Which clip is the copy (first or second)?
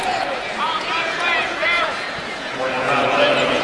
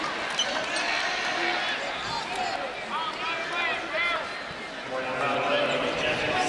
first